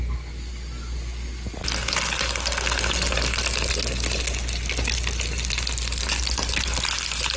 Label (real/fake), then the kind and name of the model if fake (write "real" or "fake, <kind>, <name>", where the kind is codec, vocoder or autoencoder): real